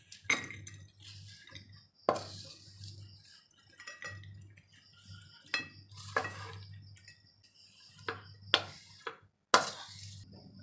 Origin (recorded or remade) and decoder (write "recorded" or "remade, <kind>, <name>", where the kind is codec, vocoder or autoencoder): recorded